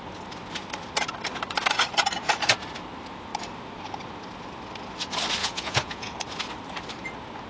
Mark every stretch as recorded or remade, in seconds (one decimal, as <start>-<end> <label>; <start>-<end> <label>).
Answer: 0.0-5.4 recorded; 5.4-6.1 remade; 6.1-7.5 recorded